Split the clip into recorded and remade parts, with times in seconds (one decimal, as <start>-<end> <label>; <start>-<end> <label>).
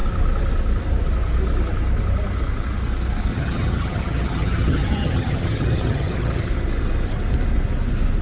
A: 0.0-3.3 recorded; 3.3-6.5 remade; 6.5-8.2 recorded